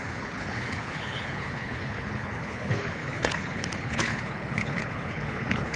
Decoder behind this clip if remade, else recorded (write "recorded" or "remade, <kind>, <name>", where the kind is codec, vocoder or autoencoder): remade, codec, HILCodec